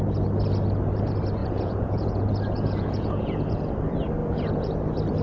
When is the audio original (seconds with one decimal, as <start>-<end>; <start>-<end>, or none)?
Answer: 0.0-1.4; 3.7-4.2; 4.7-5.2

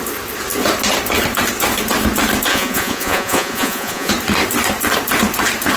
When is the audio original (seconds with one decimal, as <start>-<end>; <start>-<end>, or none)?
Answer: 0.0-2.5; 4.1-5.8